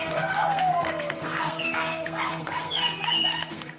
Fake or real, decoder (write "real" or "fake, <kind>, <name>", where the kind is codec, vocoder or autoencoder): fake, codec, SNAC